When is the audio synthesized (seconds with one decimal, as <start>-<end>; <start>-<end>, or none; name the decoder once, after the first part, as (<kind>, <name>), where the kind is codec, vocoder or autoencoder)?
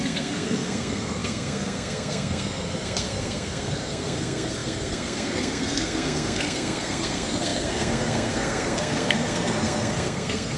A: 0.0-10.6 (codec, SNAC)